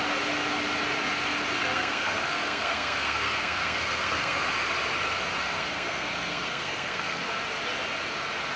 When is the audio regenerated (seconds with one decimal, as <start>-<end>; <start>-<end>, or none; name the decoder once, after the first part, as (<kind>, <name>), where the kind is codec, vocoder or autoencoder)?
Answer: 1.6-4.4 (codec, SNAC); 5.4-7.3